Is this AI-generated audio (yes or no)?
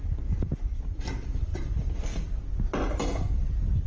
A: no